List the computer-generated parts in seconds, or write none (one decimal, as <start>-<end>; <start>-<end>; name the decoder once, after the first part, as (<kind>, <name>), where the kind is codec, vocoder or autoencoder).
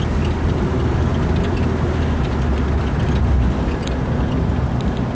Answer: none